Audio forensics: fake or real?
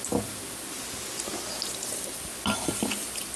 real